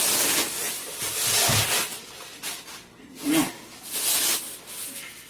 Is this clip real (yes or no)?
yes